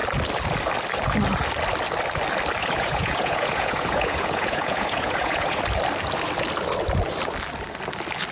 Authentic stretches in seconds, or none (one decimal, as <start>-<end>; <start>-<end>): 0.0-2.6; 5.6-8.3